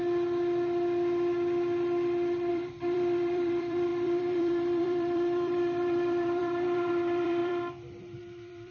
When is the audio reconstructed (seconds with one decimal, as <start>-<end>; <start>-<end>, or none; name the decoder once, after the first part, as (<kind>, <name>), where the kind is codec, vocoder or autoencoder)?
2.5-8.7 (vocoder, BigVGAN v2)